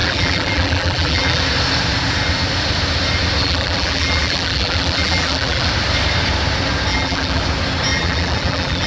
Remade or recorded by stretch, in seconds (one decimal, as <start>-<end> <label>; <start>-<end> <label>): 0.0-1.4 remade; 1.4-3.4 recorded; 3.4-5.7 remade; 5.7-6.9 recorded; 6.9-7.4 remade; 7.4-7.9 recorded; 7.9-8.9 remade